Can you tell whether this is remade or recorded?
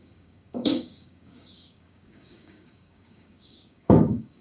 remade